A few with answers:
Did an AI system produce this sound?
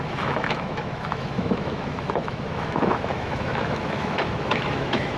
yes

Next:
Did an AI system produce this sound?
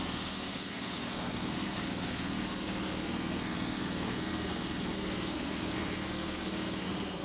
yes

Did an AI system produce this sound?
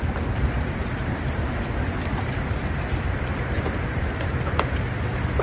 yes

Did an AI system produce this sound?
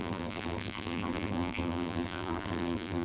yes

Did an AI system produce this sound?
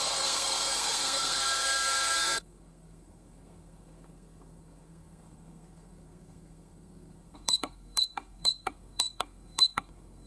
yes